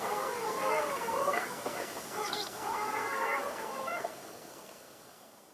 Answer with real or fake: fake